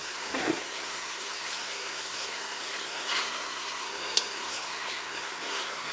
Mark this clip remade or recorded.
remade